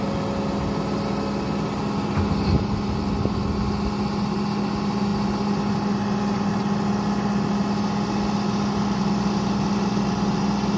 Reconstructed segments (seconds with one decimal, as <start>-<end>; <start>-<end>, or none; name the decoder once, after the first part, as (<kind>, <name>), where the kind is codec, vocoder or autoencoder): none